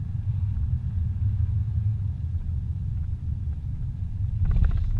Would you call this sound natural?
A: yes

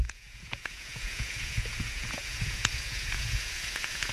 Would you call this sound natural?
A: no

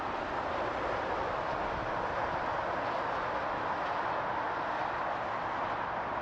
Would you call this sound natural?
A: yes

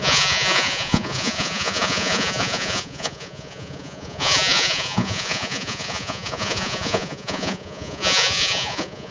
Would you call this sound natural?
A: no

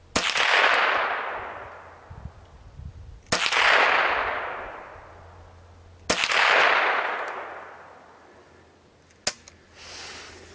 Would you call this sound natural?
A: yes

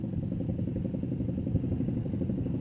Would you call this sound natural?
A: yes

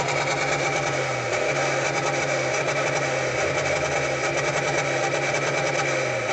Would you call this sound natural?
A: yes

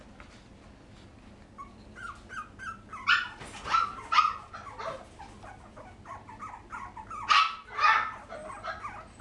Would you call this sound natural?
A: yes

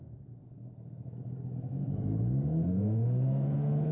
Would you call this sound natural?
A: no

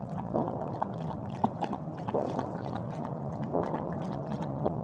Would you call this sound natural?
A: no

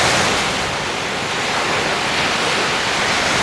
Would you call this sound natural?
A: yes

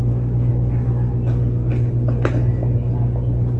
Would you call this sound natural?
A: yes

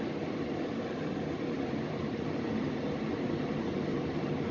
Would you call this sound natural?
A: no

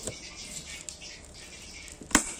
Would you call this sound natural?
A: yes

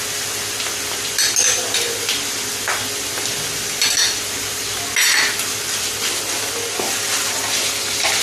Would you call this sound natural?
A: yes